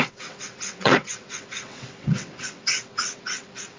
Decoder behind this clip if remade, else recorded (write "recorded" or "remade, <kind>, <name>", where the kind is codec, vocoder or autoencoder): remade, vocoder, WaveNeXt